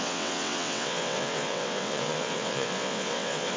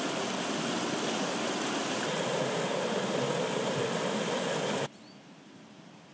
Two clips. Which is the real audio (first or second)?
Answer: second